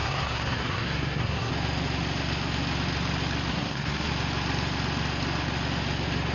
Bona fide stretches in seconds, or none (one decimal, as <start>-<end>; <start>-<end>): 1.5-3.5; 4.1-6.3